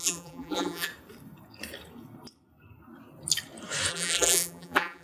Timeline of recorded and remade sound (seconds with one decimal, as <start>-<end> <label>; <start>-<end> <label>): 0.0-0.9 remade; 0.9-3.9 recorded; 3.9-5.0 remade

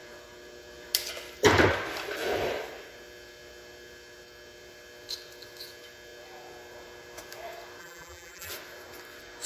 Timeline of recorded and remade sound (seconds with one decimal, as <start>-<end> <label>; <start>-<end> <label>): 0.0-7.8 recorded; 7.8-8.5 remade; 8.5-9.5 recorded

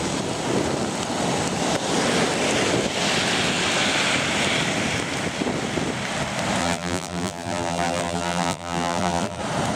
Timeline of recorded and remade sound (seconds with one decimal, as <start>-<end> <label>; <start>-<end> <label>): 0.0-6.6 recorded; 6.6-9.4 remade; 9.4-9.8 recorded

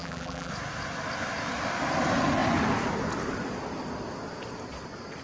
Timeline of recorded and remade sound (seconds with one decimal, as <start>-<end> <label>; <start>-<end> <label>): 0.0-0.5 remade; 0.5-5.2 recorded

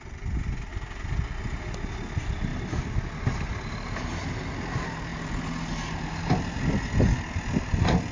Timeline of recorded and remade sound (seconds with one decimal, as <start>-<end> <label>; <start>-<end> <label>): 0.0-8.1 recorded